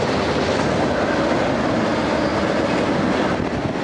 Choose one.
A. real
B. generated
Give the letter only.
A